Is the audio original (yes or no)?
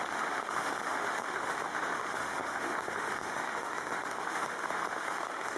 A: no